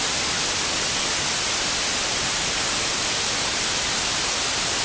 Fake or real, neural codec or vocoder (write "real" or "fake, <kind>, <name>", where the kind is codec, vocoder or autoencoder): real